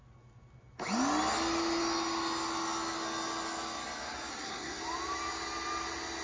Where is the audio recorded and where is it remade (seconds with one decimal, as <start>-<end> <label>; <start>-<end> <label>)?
0.0-4.3 recorded; 4.3-4.8 remade; 4.8-6.2 recorded